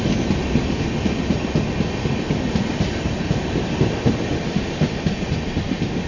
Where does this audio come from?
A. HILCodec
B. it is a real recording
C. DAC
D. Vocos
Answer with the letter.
B